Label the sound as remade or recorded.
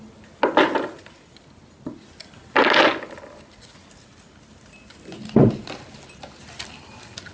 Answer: recorded